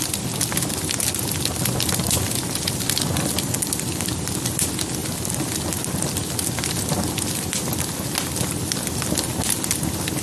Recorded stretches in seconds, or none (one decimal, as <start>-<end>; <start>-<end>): 0.0-10.2